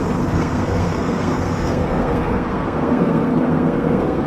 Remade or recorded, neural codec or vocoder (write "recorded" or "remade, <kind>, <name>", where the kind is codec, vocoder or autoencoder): remade, codec, SNAC